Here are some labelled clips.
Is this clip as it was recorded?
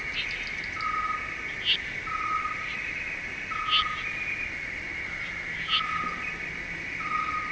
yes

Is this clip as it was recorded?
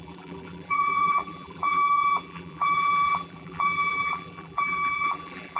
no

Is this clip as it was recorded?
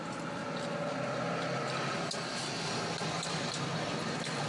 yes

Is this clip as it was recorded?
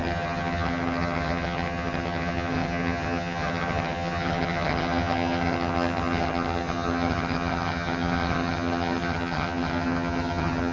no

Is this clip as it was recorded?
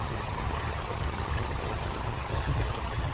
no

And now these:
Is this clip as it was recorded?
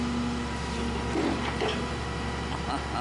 yes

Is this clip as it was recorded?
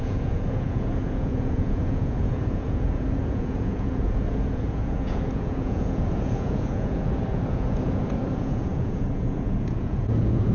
no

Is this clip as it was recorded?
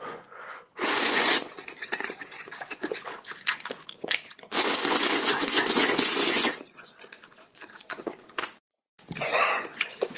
no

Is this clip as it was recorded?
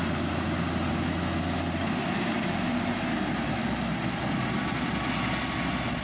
yes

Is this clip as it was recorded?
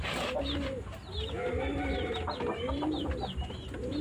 yes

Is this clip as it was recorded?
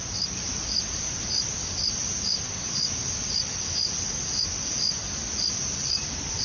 yes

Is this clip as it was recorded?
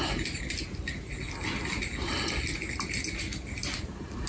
yes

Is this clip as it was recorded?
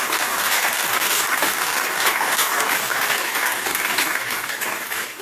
no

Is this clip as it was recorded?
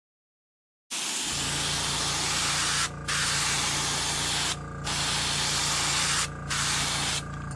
yes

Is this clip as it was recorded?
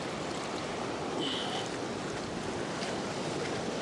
yes